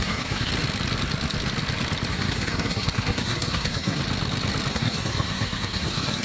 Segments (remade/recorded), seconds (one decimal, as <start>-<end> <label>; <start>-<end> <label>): 0.0-0.5 remade; 0.5-2.1 recorded; 2.1-4.0 remade; 4.0-4.7 recorded; 4.7-6.2 remade